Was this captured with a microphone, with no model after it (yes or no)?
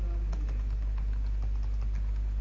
no